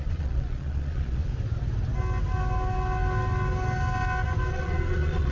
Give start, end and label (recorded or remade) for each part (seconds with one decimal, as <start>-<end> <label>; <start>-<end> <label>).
0.0-1.3 remade; 1.3-4.5 recorded; 4.5-5.3 remade